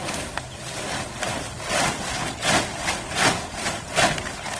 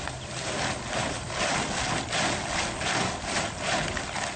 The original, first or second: second